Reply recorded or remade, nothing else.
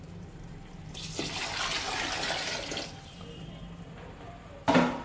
recorded